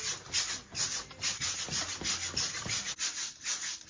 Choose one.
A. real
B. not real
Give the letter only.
A